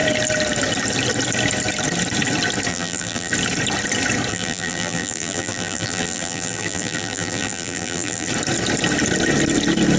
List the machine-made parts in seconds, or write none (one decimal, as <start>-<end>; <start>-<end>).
2.7-3.3; 4.3-8.3